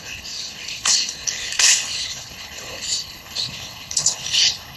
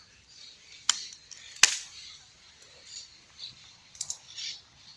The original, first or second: second